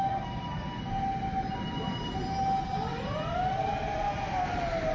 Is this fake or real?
real